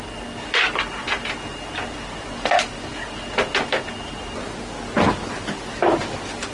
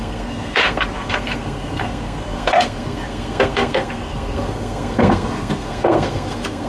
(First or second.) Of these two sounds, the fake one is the second